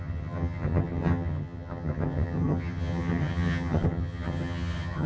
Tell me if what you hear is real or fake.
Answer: fake